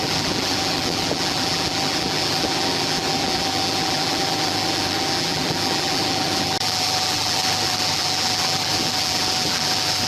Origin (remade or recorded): remade